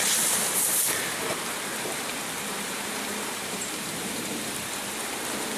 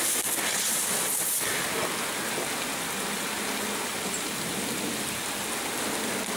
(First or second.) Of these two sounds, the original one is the second